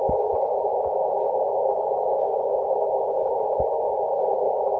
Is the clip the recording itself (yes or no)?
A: yes